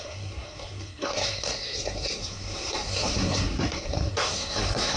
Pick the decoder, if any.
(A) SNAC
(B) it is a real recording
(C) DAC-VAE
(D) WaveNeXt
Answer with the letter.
A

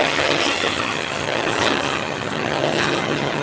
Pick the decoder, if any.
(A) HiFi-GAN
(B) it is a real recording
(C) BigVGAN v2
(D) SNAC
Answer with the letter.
A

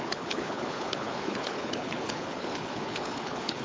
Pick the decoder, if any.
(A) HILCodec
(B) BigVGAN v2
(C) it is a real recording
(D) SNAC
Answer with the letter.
A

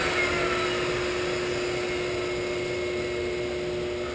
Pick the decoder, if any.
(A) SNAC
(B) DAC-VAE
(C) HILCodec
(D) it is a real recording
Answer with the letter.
D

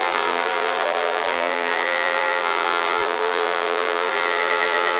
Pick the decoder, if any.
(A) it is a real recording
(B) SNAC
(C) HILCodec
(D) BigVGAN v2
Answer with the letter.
D